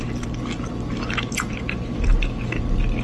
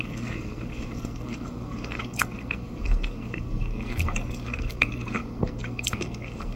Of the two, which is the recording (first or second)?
first